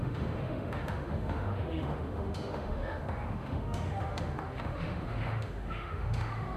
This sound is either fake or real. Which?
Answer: fake